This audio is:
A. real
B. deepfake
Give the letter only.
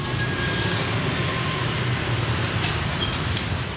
A